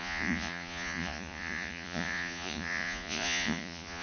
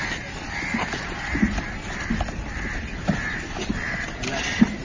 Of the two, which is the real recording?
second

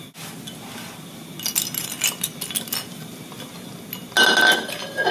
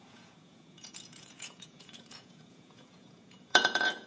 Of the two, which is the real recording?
first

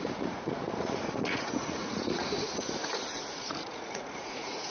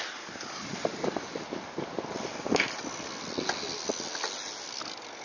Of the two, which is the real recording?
second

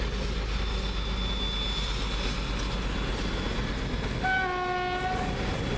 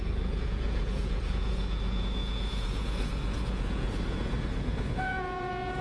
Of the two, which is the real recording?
first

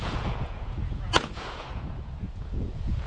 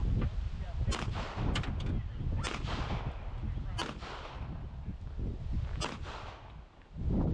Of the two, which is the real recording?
second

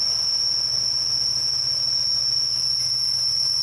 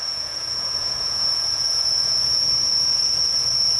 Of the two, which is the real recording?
first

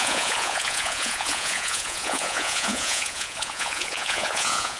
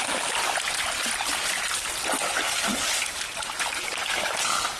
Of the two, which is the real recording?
second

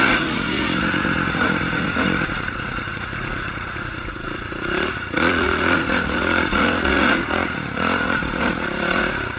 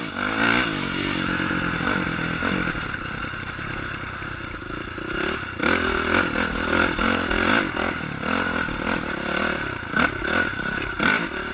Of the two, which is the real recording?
second